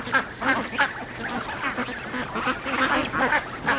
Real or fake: real